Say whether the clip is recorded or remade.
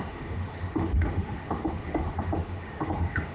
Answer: remade